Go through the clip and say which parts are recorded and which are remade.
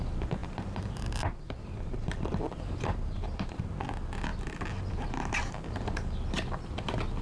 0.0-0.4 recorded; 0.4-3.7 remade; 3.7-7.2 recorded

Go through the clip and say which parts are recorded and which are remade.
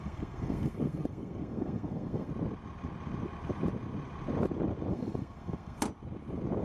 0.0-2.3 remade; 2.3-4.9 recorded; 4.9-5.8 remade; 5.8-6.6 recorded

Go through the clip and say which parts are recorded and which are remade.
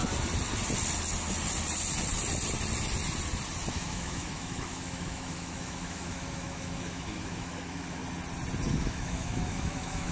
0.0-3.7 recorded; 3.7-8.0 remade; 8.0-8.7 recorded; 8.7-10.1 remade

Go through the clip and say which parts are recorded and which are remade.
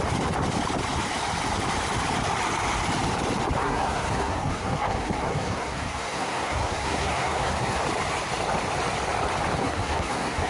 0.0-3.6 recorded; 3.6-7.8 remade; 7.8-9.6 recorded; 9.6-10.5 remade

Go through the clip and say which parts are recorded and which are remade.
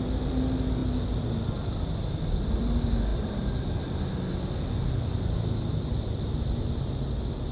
0.0-7.5 recorded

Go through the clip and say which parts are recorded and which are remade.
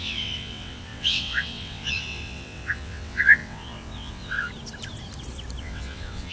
0.0-4.5 remade; 4.5-5.6 recorded; 5.6-6.3 remade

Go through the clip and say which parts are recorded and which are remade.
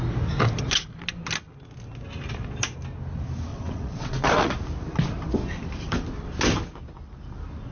0.0-3.5 recorded; 3.5-4.5 remade; 4.5-7.7 recorded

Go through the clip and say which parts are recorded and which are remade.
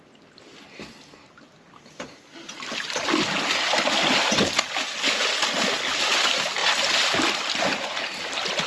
0.0-8.7 recorded